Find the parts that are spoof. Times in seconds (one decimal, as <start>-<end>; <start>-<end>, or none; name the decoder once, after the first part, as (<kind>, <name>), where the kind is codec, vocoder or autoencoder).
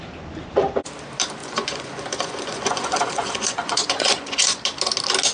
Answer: 1.4-4.6 (vocoder, Vocos)